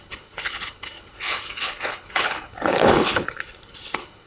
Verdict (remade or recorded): remade